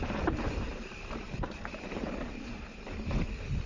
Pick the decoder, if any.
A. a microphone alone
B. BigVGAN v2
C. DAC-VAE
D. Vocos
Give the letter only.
B